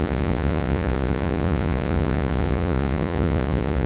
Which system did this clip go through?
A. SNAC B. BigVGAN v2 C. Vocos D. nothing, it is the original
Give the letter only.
C